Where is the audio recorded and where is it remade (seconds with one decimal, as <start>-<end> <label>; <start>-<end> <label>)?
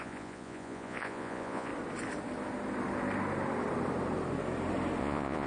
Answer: 0.0-1.7 remade; 1.7-5.0 recorded; 5.0-5.5 remade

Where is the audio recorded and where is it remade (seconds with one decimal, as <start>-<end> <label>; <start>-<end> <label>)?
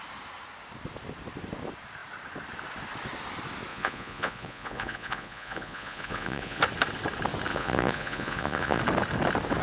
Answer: 0.0-3.7 recorded; 3.7-6.6 remade; 6.6-7.5 recorded; 7.5-8.8 remade; 8.8-9.6 recorded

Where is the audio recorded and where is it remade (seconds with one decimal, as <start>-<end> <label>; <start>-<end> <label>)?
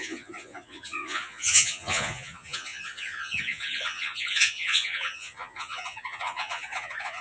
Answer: 0.0-7.2 remade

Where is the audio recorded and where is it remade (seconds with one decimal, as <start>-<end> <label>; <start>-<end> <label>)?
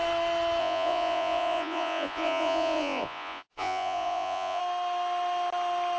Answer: 0.0-0.6 recorded; 0.6-4.6 remade; 4.6-6.0 recorded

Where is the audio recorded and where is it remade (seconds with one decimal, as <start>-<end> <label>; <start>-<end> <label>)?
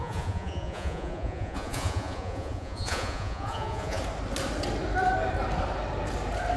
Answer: 0.0-4.0 remade; 4.0-6.6 recorded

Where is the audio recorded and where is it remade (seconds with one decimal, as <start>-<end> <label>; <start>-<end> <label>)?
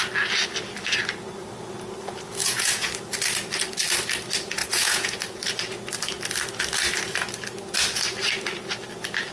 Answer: 0.0-2.4 recorded; 2.4-2.9 remade; 2.9-4.6 recorded; 4.6-5.2 remade; 5.2-9.3 recorded